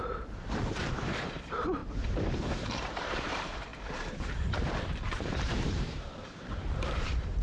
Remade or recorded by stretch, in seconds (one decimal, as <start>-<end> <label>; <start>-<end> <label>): 0.0-1.8 remade; 1.8-2.6 recorded; 2.6-7.4 remade